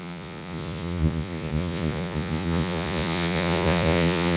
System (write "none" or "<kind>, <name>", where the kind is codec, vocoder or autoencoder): vocoder, Vocos